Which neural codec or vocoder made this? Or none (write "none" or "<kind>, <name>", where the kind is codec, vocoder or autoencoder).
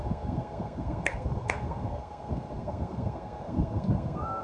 codec, SNAC